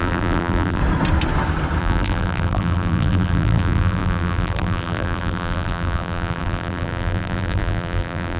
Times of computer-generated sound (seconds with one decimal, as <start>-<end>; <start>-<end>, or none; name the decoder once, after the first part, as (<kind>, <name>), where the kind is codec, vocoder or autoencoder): 0.0-0.8 (vocoder, BigVGAN v2); 1.8-8.4